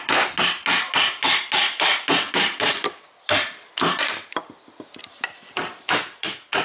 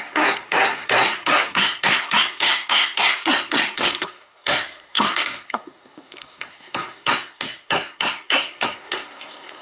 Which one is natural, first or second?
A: first